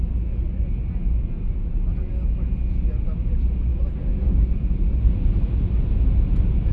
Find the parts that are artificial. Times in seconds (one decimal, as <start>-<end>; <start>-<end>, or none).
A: 3.7-4.4